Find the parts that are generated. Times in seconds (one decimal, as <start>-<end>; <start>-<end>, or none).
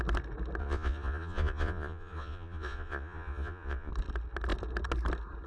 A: 0.6-3.9